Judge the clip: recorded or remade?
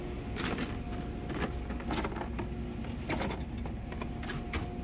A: recorded